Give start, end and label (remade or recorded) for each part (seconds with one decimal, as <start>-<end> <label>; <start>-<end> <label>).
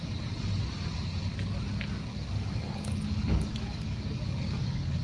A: 0.0-2.1 recorded; 2.1-5.0 remade